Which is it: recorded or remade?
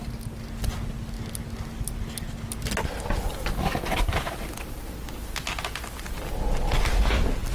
recorded